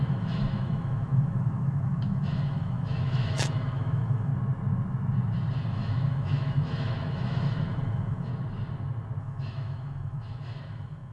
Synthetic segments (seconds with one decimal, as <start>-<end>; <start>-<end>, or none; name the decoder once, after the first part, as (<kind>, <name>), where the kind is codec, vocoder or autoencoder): 0.0-4.3 (autoencoder, DAC-VAE); 5.7-8.3; 9.2-11.1